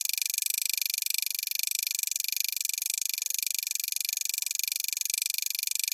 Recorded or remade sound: recorded